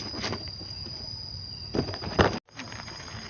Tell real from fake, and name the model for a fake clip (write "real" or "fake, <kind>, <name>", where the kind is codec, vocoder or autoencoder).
real